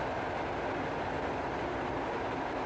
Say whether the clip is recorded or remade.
recorded